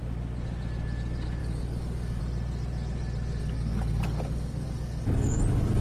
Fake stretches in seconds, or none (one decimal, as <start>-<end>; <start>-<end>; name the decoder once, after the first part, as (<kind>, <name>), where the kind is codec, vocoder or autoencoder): 1.4-2.2 (codec, DAC); 3.4-5.8